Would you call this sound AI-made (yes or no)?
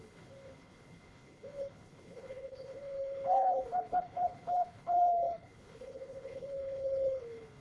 yes